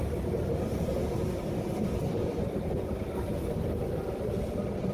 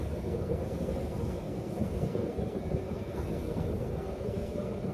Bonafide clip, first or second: first